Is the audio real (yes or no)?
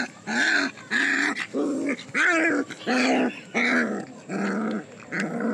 yes